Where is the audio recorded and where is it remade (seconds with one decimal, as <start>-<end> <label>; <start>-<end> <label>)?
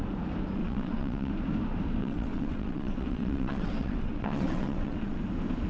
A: 0.0-0.6 recorded; 0.6-1.3 remade; 1.3-2.0 recorded; 2.0-5.2 remade; 5.2-5.7 recorded